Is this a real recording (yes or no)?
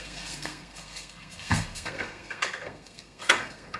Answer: no